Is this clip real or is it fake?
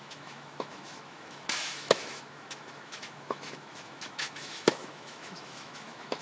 fake